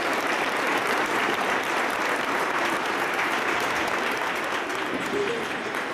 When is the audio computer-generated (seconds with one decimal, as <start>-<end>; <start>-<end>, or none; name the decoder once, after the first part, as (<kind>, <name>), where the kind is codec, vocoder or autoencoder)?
0.7-4.2 (vocoder, BigVGAN v2); 4.7-5.3